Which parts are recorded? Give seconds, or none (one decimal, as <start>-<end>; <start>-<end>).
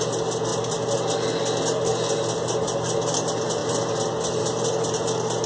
0.0-5.5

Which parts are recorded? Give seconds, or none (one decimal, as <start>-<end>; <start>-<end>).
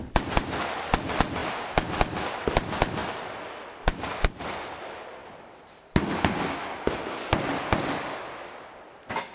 0.0-9.3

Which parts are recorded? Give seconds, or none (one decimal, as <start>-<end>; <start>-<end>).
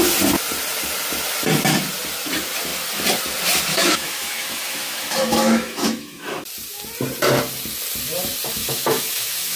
0.0-3.7; 6.4-8.5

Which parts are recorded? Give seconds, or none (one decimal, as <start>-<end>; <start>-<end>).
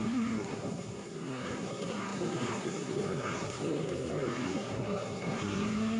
none